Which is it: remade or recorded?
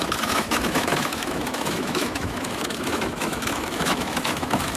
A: remade